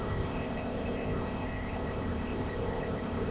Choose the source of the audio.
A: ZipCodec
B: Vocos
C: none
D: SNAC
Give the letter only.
A